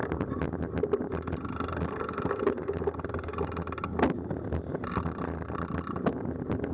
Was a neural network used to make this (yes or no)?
no